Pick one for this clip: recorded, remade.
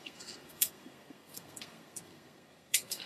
remade